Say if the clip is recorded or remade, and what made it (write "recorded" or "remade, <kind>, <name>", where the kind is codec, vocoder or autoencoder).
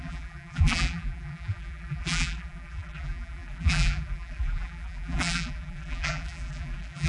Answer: remade, vocoder, BigVGAN v2